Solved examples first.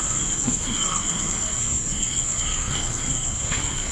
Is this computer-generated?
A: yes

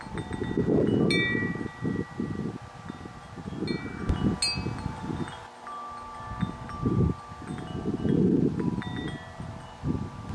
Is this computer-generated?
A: no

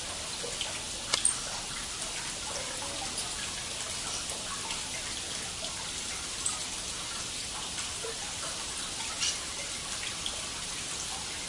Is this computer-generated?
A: no